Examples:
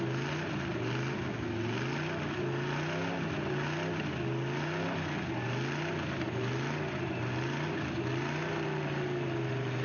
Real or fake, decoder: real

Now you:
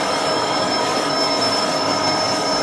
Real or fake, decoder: fake, codec, DAC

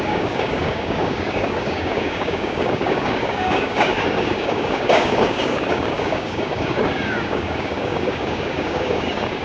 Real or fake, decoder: fake, codec, DAC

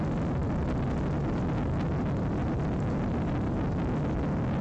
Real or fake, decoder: real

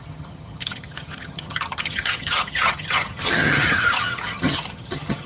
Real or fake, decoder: fake, vocoder, HiFi-GAN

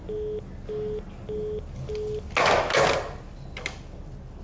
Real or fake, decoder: real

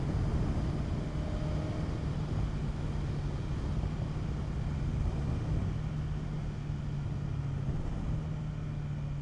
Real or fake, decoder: real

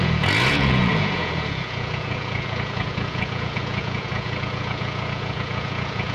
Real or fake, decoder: fake, vocoder, Vocos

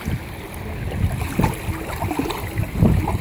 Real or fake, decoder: real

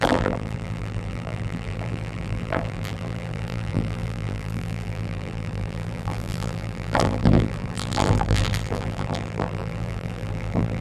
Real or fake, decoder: fake, vocoder, BigVGAN v2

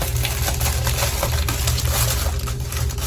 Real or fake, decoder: real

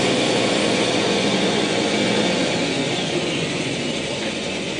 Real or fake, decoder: fake, vocoder, Vocos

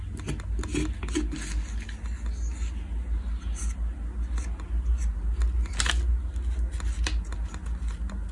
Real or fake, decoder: real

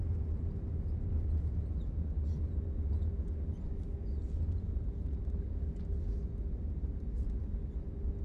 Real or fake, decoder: real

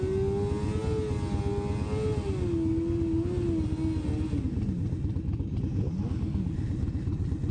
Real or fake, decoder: real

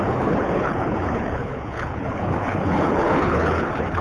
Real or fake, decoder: fake, codec, HILCodec